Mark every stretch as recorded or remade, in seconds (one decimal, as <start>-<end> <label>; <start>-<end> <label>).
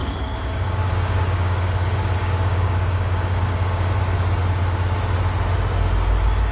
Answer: 0.0-3.9 remade; 3.9-6.5 recorded